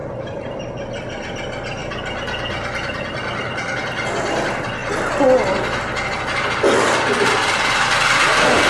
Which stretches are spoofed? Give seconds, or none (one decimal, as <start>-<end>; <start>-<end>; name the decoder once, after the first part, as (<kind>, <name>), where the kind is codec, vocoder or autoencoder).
0.0-1.2 (vocoder, BigVGAN v2)